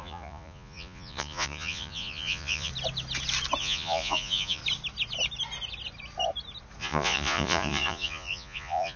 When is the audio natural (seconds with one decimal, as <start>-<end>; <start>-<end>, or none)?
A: 2.7-3.6; 4.6-6.8